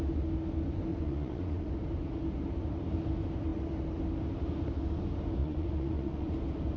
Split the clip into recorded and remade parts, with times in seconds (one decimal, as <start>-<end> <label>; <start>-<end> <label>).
0.0-0.9 recorded; 0.9-1.7 remade; 1.7-5.4 recorded; 5.4-6.3 remade; 6.3-6.8 recorded